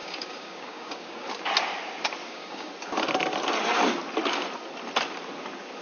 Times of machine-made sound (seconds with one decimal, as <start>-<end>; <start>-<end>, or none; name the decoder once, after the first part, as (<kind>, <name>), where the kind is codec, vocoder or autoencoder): 0.0-1.3 (codec, DAC); 2.2-2.7